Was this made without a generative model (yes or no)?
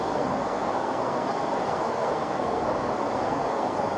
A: no